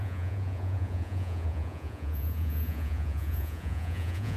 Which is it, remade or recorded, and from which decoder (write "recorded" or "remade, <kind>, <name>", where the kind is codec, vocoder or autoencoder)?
remade, vocoder, Vocos